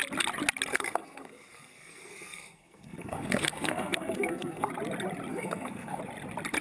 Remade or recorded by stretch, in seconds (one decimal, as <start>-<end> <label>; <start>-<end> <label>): 0.0-0.7 recorded; 0.7-4.7 remade; 4.7-5.3 recorded; 5.3-6.0 remade; 6.0-6.6 recorded